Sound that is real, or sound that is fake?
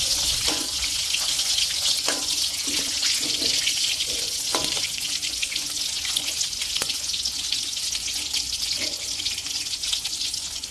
fake